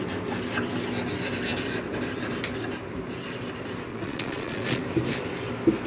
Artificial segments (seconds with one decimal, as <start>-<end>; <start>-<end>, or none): 3.9-4.8